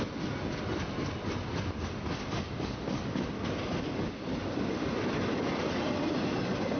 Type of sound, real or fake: real